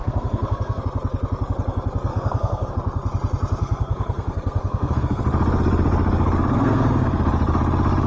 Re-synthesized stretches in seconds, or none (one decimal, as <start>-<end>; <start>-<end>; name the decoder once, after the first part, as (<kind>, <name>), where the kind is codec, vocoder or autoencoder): 0.0-0.8 (codec, SNAC); 2.1-2.7; 3.6-5.2; 6.5-7.2